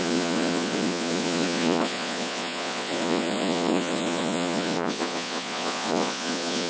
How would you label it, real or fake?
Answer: fake